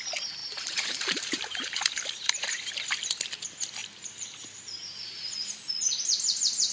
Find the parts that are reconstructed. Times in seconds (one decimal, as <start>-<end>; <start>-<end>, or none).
0.4-2.7; 3.8-5.2